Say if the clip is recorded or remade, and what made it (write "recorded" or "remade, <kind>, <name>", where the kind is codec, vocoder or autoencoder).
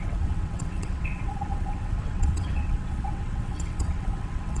remade, vocoder, WaveNeXt